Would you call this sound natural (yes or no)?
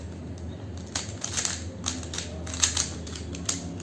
yes